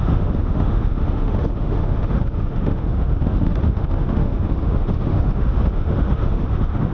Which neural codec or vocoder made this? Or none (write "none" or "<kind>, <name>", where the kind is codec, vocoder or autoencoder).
autoencoder, DAC-VAE